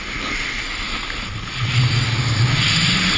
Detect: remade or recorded recorded